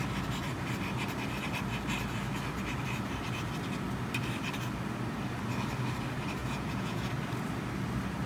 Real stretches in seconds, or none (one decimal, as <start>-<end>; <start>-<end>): 0.0-6.4; 7.1-8.3